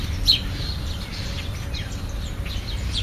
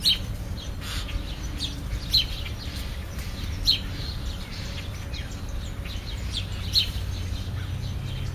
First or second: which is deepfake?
first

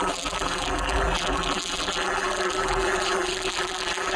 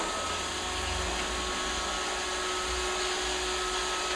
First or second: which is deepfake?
first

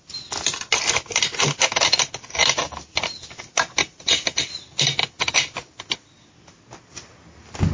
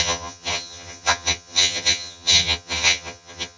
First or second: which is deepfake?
second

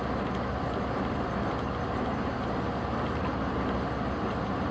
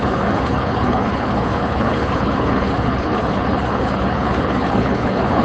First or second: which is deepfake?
second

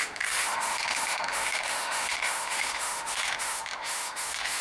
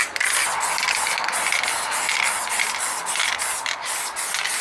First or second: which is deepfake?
first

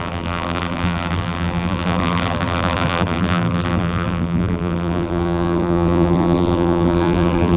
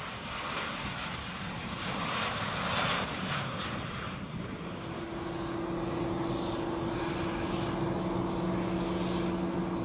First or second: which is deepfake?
first